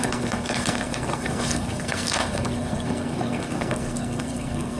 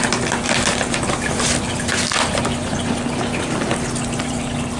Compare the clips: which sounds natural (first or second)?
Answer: second